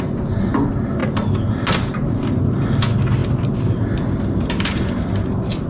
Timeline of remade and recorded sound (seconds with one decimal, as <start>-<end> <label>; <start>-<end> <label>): 0.0-5.7 recorded